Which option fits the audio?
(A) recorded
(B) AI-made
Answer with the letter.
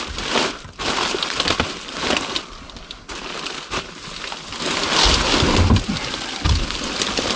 A